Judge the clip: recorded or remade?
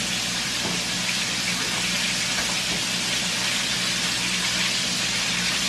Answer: recorded